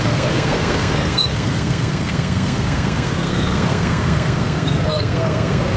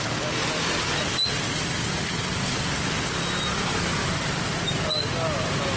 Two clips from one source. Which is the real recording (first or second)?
second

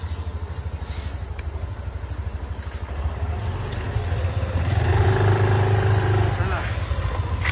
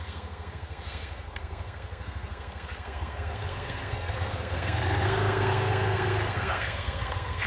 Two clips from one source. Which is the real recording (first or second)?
first